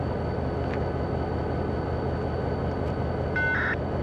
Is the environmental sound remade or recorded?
recorded